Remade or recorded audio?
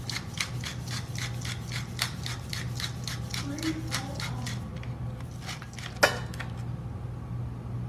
recorded